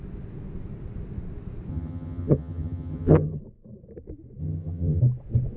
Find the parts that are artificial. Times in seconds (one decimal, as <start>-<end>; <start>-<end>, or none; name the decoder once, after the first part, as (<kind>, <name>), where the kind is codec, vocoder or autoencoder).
1.7-3.4 (vocoder, HiFi-GAN); 4.4-5.0